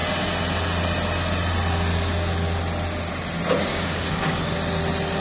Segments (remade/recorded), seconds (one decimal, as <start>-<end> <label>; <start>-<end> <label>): 0.0-3.7 recorded; 3.7-4.5 remade; 4.5-5.2 recorded